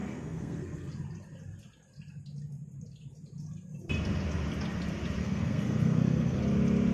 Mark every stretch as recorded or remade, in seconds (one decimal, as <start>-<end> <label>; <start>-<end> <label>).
0.0-0.9 remade; 0.9-5.2 recorded; 5.2-6.4 remade; 6.4-6.9 recorded

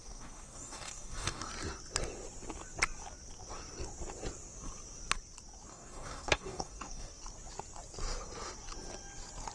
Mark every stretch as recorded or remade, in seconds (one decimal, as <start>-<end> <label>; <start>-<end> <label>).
0.0-1.5 remade; 1.5-5.7 recorded; 5.7-7.1 remade; 7.1-9.5 recorded

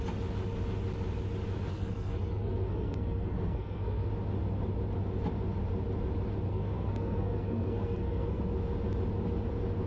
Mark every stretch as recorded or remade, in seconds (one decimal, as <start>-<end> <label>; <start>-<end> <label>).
0.0-1.7 recorded; 1.7-4.1 remade; 4.1-6.5 recorded; 6.5-8.4 remade; 8.4-9.9 recorded

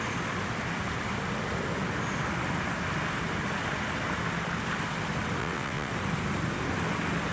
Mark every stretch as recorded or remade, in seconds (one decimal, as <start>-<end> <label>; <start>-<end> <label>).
0.0-5.4 recorded; 5.4-5.9 remade; 5.9-7.3 recorded

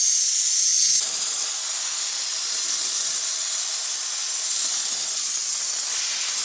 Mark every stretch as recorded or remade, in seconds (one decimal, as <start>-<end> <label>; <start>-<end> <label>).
0.0-6.4 recorded

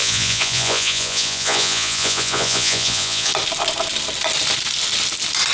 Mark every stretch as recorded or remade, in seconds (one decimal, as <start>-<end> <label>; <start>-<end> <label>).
0.0-3.3 remade; 3.3-5.5 recorded